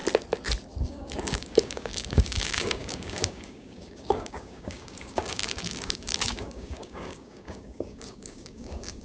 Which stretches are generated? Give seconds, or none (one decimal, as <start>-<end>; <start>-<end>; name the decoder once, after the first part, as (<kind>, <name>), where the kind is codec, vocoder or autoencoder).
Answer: 0.8-9.0 (codec, DAC)